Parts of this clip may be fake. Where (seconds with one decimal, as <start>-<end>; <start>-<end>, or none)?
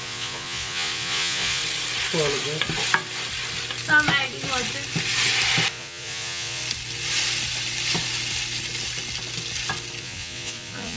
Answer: 0.0-1.6; 5.7-6.6; 10.0-11.0